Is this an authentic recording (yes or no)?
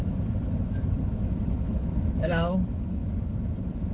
no